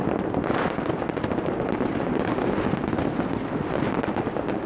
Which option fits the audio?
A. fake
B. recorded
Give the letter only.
B